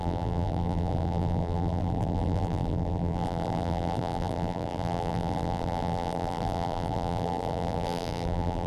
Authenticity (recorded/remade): remade